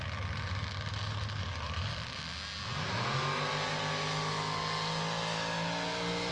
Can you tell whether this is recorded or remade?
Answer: recorded